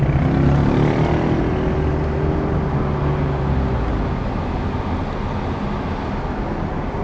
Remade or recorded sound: recorded